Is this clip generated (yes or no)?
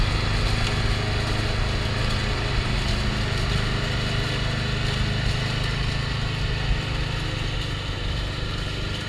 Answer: no